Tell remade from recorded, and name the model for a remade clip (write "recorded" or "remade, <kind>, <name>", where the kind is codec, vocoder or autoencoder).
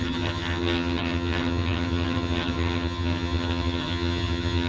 remade, vocoder, HiFi-GAN